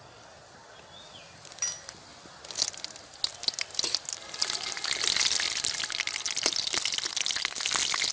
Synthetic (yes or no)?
no